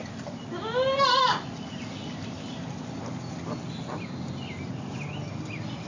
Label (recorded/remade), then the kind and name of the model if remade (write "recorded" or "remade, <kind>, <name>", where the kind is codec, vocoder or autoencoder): recorded